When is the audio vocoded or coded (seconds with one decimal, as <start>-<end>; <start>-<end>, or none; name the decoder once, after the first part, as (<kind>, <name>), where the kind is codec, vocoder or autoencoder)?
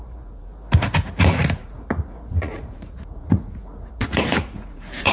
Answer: 0.0-0.5 (vocoder, Vocos); 1.2-5.1